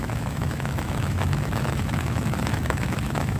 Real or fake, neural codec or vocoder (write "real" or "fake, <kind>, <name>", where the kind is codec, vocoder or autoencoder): fake, autoencoder, DAC-VAE